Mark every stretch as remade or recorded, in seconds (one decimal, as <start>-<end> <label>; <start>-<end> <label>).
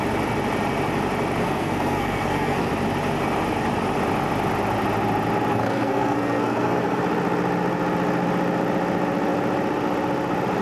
0.0-1.4 recorded; 1.4-2.7 remade; 2.7-5.5 recorded; 5.5-7.0 remade; 7.0-10.6 recorded